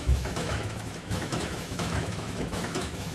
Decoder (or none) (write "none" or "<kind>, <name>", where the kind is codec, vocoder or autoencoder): autoencoder, DAC-VAE